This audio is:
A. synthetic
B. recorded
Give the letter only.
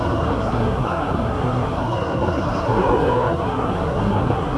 A